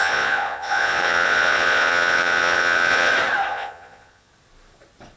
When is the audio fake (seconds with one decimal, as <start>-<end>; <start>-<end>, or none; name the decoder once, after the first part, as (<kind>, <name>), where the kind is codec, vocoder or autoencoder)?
0.0-3.1 (vocoder, Vocos); 3.5-4.3